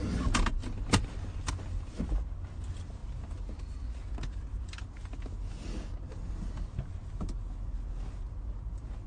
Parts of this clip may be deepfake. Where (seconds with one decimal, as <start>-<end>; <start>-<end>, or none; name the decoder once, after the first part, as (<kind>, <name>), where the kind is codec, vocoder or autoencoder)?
0.6-1.5 (vocoder, BigVGAN v2)